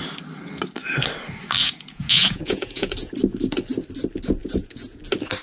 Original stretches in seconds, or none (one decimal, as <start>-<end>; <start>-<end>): 0.0-1.6; 3.1-4.4; 5.0-5.4